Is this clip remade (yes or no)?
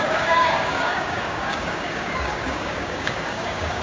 yes